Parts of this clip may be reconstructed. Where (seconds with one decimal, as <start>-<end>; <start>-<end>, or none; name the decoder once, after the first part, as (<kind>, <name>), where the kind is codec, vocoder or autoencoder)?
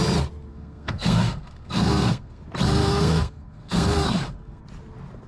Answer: 0.5-2.4 (codec, SNAC); 2.8-4.6